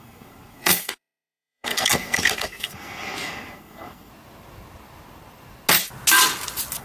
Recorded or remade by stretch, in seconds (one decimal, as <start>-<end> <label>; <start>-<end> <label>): 0.0-4.1 remade; 4.1-6.8 recorded